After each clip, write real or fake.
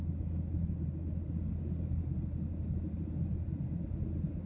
real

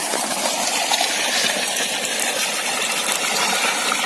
real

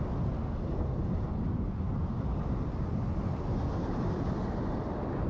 real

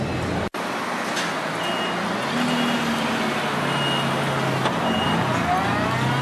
real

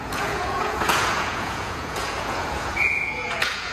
fake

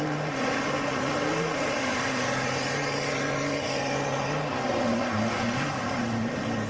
real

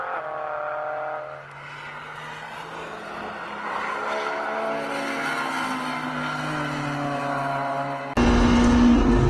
real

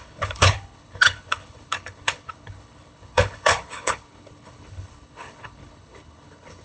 fake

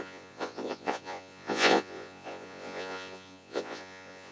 fake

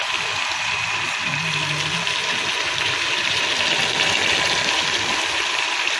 real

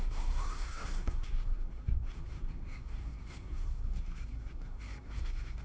fake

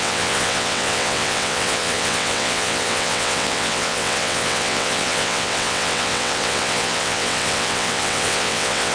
fake